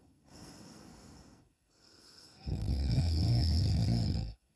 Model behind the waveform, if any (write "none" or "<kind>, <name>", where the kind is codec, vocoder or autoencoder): codec, SNAC